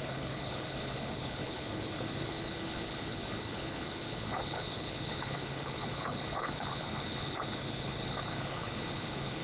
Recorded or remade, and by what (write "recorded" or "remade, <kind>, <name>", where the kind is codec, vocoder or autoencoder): remade, codec, HILCodec